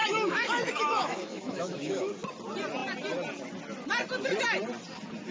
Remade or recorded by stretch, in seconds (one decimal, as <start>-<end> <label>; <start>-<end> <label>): 0.0-2.1 remade; 2.1-5.3 recorded

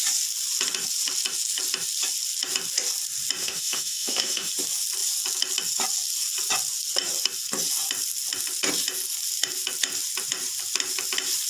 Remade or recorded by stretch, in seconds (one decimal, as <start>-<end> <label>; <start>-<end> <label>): 0.0-3.4 recorded; 3.4-4.5 remade; 4.5-11.5 recorded

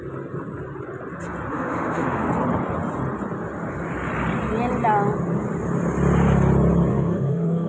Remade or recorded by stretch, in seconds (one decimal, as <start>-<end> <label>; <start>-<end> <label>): 0.0-1.5 recorded; 1.5-2.3 remade; 2.3-6.9 recorded; 6.9-7.7 remade